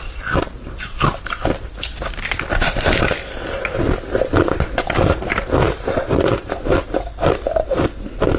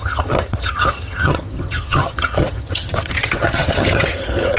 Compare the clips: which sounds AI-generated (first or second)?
second